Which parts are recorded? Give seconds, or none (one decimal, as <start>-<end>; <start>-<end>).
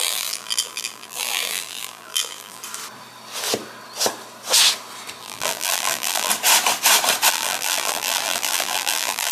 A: 2.6-5.2; 6.3-7.3